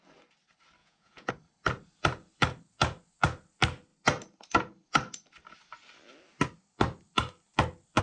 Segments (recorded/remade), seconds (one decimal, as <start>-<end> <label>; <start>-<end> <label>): 0.0-0.8 recorded; 0.8-1.3 remade; 1.3-8.0 recorded

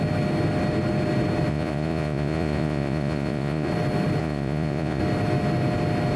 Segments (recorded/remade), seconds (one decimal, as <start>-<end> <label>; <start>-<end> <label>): 0.0-1.5 recorded; 1.5-3.7 remade; 3.7-4.2 recorded; 4.2-5.0 remade; 5.0-6.2 recorded

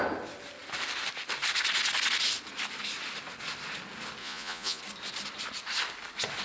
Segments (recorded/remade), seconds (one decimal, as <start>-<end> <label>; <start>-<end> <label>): 0.0-4.2 recorded; 4.2-4.8 remade; 4.8-6.4 recorded

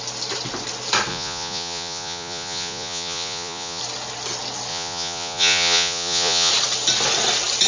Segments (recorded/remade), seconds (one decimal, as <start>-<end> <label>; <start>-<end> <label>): 0.0-1.1 recorded; 1.1-3.8 remade; 3.8-4.7 recorded; 4.7-6.5 remade; 6.5-7.7 recorded